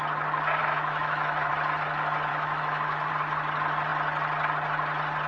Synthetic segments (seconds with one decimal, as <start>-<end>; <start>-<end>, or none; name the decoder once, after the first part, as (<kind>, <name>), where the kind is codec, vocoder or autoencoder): 0.6-1.5 (autoencoder, DAC-VAE); 2.3-3.1